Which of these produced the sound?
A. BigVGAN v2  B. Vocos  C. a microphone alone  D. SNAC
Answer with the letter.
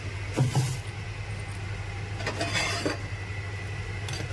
C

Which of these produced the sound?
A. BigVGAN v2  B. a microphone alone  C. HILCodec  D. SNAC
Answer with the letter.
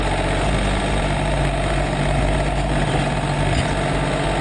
B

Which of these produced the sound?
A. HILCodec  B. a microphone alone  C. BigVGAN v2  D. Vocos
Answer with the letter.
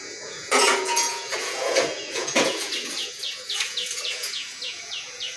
D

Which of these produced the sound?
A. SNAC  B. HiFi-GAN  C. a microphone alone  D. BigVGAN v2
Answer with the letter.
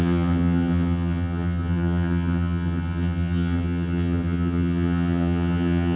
B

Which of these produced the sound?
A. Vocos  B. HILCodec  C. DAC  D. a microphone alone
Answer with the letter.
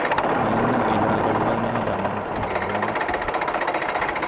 D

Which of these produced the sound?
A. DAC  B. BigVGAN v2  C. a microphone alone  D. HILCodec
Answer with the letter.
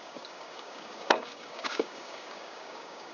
A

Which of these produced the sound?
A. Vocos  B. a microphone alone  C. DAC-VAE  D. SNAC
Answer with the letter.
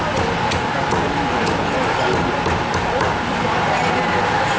B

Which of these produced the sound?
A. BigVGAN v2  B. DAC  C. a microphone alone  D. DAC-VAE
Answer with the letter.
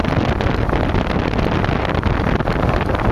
C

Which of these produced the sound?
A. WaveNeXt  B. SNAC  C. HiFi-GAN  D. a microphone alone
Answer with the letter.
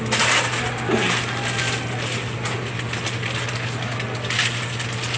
D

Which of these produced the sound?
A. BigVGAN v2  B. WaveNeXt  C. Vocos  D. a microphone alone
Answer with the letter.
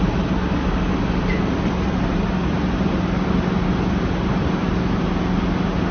D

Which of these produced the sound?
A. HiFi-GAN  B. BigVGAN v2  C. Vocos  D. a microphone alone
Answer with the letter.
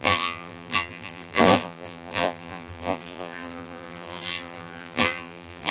B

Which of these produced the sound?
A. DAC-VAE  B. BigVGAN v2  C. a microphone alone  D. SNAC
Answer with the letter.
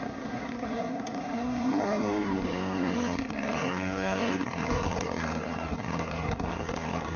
D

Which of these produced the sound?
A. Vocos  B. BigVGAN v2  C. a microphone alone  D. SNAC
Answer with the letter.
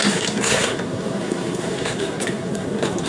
D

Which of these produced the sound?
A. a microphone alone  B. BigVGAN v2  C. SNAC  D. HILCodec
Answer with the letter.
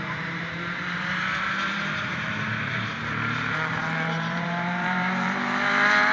B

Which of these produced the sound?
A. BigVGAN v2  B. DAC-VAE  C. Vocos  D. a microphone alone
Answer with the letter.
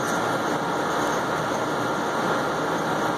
D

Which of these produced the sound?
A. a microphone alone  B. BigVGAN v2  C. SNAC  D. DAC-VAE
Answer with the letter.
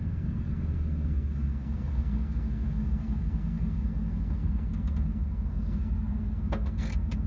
C